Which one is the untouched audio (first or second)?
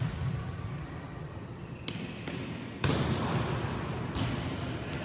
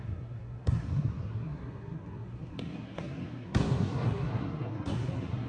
first